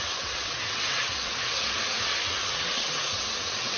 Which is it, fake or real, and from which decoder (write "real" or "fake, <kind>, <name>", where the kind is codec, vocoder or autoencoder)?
fake, vocoder, WaveNeXt